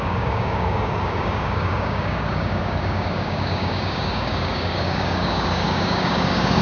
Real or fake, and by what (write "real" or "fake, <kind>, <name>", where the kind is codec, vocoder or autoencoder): fake, codec, DAC